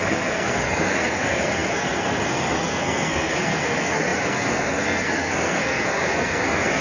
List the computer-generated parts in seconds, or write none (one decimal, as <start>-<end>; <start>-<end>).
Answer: 0.0-6.8